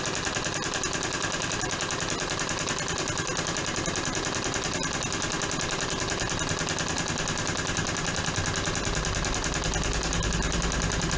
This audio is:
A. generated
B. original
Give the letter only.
B